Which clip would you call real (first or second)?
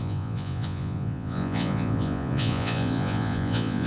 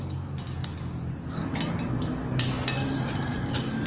second